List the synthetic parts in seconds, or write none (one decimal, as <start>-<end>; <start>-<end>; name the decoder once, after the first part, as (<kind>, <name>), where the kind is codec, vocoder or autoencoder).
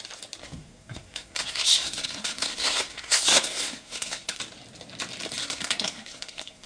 0.4-4.4 (codec, SNAC); 5.4-6.7